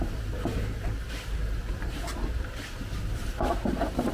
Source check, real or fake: fake